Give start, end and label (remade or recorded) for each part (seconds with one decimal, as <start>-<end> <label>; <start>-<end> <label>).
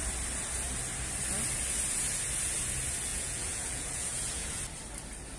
0.0-3.1 recorded; 3.1-4.6 remade; 4.6-5.4 recorded